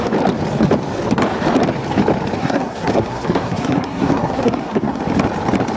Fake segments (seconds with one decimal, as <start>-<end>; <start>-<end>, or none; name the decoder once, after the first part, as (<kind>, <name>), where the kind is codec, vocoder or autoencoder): 2.4-5.0 (codec, SNAC)